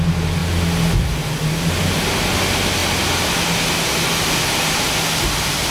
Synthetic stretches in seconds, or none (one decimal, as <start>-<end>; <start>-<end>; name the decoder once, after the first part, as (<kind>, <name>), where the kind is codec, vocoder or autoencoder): none